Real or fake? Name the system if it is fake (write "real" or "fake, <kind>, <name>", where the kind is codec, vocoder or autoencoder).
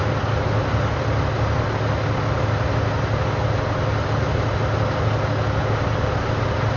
real